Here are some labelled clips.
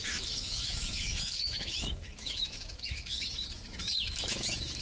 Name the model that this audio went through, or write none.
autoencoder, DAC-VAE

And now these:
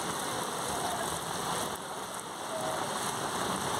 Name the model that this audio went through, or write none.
none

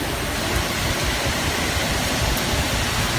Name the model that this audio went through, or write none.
none